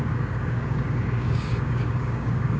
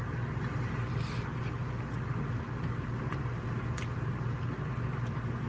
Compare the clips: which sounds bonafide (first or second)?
second